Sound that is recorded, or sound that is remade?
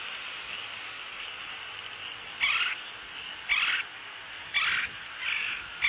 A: recorded